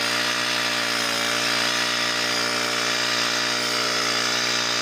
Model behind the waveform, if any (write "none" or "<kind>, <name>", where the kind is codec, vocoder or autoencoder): none